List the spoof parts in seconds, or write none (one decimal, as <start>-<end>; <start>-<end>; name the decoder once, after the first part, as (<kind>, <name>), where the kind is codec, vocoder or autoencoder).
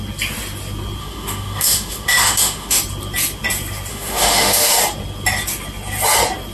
1.0-2.8 (autoencoder, DAC-VAE); 3.9-4.8